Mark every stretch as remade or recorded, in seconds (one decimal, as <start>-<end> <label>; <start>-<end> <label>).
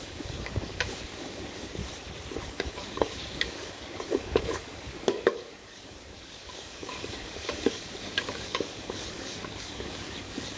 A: 0.0-1.8 remade; 1.8-2.4 recorded; 2.4-10.6 remade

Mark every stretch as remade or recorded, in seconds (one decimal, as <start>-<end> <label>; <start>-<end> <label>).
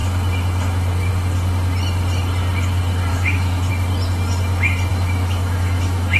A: 0.0-3.1 recorded; 3.1-3.7 remade; 3.7-4.9 recorded; 4.9-6.2 remade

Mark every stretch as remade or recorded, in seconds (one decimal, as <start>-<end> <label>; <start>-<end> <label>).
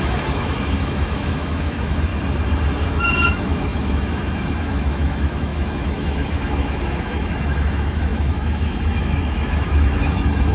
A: 0.0-2.1 remade; 2.1-2.8 recorded; 2.8-10.5 remade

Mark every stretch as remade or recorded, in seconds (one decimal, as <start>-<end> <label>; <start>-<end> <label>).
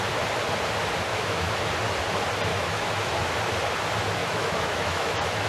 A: 0.0-1.1 recorded; 1.1-1.6 remade; 1.6-2.5 recorded; 2.5-3.1 remade; 3.1-4.2 recorded; 4.2-5.5 remade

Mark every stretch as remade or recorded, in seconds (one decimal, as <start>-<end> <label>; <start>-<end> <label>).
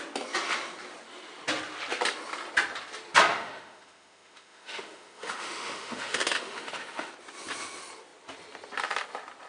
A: 0.0-3.3 recorded; 3.3-7.1 remade; 7.1-9.5 recorded